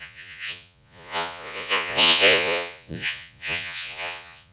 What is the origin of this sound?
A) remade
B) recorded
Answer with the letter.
A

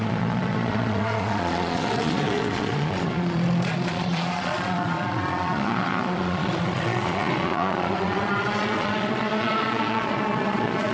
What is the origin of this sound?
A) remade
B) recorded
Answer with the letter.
A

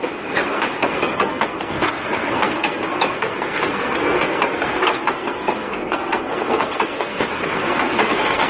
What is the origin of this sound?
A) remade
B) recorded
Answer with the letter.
A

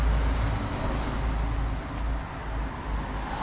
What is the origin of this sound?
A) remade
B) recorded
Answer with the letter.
B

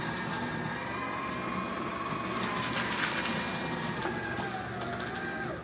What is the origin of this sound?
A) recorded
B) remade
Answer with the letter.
A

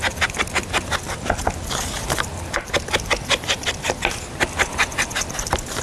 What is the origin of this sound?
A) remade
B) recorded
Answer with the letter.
B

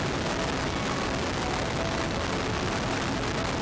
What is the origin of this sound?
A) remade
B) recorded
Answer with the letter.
B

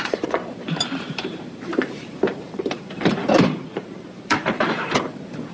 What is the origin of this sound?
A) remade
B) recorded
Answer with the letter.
A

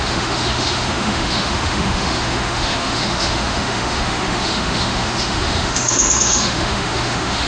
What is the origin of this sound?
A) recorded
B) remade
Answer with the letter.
B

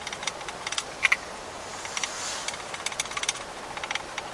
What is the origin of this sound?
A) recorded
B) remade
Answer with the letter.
A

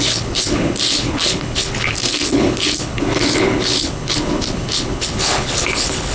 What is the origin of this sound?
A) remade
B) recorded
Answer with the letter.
A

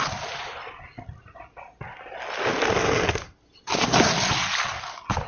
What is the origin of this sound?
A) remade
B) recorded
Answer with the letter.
B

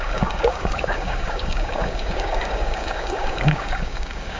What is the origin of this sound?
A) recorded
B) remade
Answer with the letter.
B